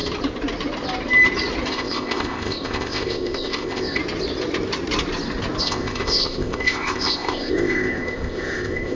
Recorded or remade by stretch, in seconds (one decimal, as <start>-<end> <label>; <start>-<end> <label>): 0.0-1.7 recorded; 1.7-4.0 remade; 4.0-5.6 recorded; 5.6-9.0 remade